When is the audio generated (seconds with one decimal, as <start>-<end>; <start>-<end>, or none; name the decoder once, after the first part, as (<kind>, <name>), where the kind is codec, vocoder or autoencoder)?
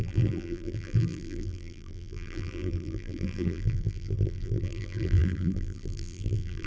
0.0-6.7 (vocoder, BigVGAN v2)